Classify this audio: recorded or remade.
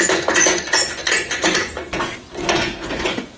remade